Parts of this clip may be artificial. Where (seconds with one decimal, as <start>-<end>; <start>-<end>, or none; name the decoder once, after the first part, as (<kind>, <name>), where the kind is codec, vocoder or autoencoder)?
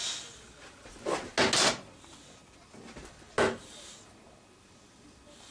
none